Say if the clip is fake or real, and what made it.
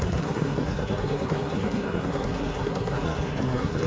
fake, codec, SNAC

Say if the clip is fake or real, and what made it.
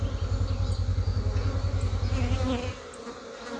real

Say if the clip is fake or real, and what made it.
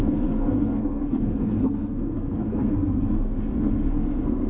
fake, codec, SNAC